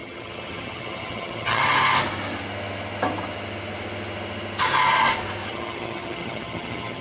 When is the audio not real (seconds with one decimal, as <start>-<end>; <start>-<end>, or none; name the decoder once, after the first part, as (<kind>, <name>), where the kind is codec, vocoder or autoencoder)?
0.0-1.6 (vocoder, HiFi-GAN); 5.5-7.0